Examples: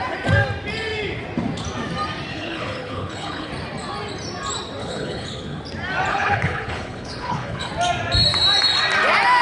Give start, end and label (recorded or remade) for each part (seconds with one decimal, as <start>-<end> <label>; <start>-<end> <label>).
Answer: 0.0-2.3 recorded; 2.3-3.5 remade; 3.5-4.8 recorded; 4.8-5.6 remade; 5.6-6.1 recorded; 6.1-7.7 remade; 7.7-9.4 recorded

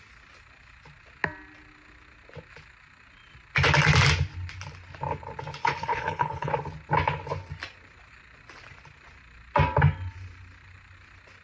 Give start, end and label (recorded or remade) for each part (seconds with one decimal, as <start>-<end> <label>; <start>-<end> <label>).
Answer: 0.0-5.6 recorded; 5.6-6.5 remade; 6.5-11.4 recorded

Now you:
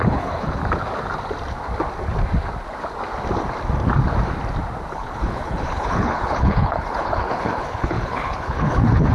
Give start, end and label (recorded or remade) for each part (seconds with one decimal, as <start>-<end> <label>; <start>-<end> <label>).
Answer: 0.0-0.6 remade; 0.6-4.9 recorded; 4.9-9.1 remade

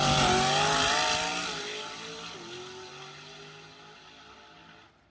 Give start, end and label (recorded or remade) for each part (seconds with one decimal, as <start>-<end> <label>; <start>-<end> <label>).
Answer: 0.0-5.1 recorded

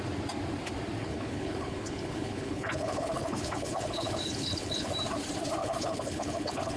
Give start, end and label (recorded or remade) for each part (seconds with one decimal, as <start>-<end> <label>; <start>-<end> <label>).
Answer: 0.0-1.0 recorded; 1.0-4.9 remade; 4.9-5.6 recorded; 5.6-6.8 remade

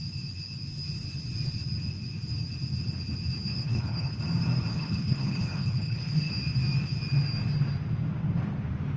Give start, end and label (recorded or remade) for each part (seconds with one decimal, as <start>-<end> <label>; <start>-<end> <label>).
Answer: 0.0-3.6 recorded; 3.6-4.2 remade; 4.2-4.7 recorded; 4.7-6.3 remade; 6.3-9.0 recorded

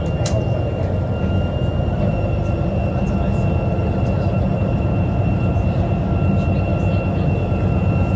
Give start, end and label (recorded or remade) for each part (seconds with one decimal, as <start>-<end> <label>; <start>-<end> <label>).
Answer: 0.0-8.2 recorded

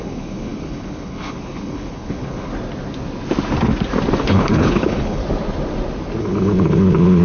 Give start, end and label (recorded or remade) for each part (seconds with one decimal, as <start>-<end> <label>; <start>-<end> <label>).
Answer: 0.0-2.5 remade; 2.5-4.2 recorded; 4.2-5.2 remade; 5.2-6.2 recorded; 6.2-7.2 remade